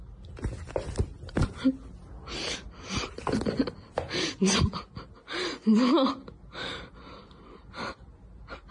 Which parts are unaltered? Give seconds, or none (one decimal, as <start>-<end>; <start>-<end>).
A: 0.0-8.7